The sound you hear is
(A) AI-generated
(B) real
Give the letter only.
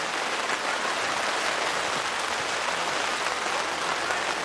B